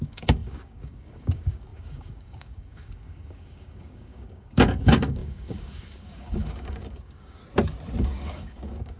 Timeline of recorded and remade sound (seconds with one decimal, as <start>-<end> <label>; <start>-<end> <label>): 0.0-7.4 remade; 7.4-8.0 recorded; 8.0-9.0 remade